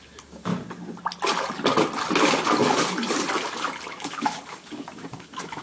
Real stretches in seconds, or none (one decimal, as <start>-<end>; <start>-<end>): 0.5-3.9